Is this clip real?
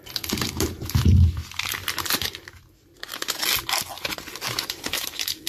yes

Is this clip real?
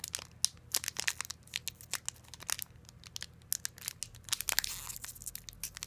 yes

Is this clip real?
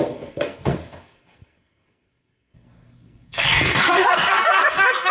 no